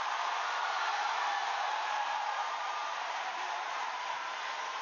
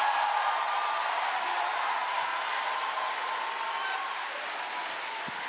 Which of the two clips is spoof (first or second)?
first